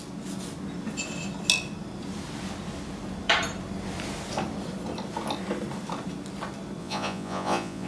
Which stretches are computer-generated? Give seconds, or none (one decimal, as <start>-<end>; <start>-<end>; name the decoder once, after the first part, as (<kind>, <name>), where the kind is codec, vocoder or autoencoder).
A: 6.8-7.9 (vocoder, Vocos)